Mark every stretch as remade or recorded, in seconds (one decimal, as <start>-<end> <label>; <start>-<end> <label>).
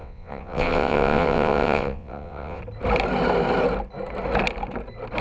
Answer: 0.0-2.6 remade; 2.6-5.2 recorded